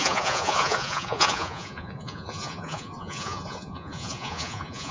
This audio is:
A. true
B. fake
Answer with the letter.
B